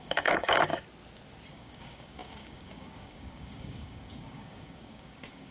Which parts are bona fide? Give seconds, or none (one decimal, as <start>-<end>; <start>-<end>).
0.7-1.5